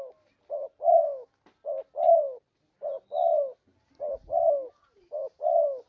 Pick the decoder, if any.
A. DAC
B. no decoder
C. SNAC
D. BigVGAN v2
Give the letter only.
B